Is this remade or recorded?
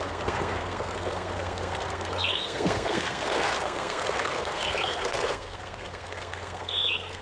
remade